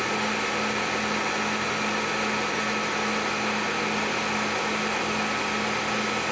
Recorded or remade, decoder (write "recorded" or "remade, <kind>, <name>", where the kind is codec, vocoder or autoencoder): recorded